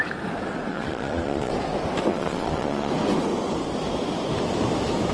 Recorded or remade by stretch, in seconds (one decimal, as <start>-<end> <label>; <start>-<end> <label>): 0.0-0.7 recorded; 0.7-1.5 remade; 1.5-2.1 recorded; 2.1-2.9 remade; 2.9-5.1 recorded